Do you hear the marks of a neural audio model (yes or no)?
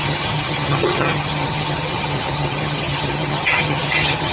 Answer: yes